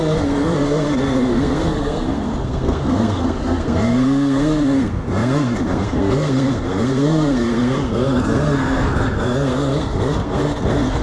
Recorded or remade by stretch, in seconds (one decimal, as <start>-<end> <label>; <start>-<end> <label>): 0.0-11.0 remade